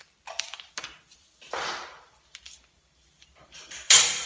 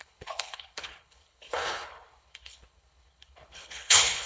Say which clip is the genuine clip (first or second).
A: first